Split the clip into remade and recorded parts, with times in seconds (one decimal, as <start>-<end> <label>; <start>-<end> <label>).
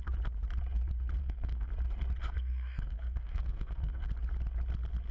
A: 0.0-1.2 recorded; 1.2-1.7 remade; 1.7-2.2 recorded; 2.2-4.1 remade; 4.1-5.1 recorded